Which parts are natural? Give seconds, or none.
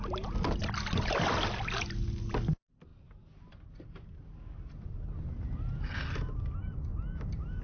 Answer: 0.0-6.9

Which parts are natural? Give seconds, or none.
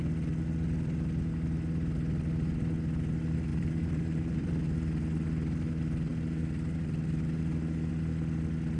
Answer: 0.0-3.5; 4.5-8.8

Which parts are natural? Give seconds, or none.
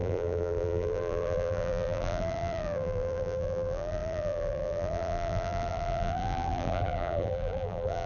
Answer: none